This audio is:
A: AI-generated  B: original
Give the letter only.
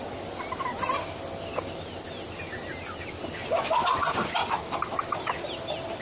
B